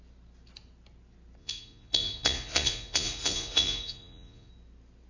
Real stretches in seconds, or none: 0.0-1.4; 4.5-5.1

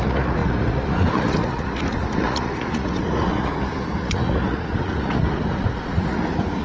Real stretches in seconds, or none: none

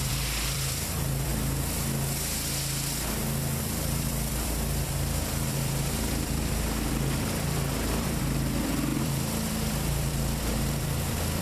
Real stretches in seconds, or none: 1.3-3.6